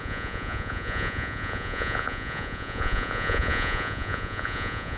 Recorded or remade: remade